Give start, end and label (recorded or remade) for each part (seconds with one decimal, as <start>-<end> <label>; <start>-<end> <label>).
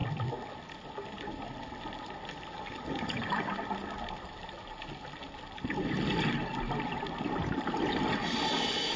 0.0-9.0 recorded